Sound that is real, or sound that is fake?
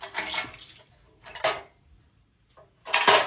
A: real